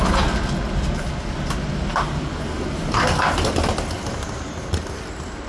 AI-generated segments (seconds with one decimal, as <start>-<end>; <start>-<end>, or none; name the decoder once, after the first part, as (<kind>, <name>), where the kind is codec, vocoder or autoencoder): none